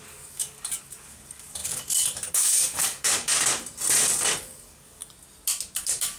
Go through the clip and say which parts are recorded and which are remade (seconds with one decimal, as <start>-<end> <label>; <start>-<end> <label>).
0.0-3.3 remade; 3.3-4.4 recorded; 4.4-5.0 remade; 5.0-5.8 recorded; 5.8-6.2 remade